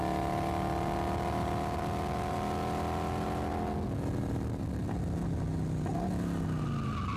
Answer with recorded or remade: recorded